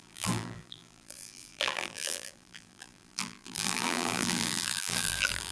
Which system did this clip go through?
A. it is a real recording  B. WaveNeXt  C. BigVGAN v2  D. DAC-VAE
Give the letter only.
C